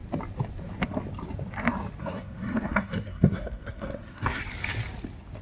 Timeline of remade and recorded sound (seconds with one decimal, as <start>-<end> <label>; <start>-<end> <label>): 0.0-2.0 recorded; 2.0-4.4 remade; 4.4-5.4 recorded